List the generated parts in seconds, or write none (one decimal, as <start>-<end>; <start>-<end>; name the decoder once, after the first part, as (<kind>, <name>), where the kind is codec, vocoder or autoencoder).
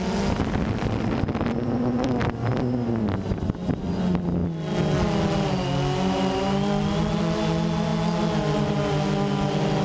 none